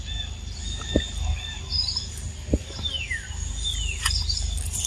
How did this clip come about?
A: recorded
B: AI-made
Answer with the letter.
A